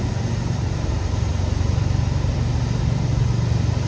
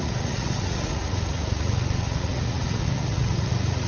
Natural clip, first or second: first